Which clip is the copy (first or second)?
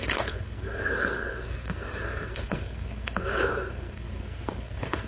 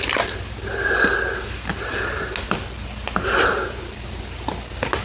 first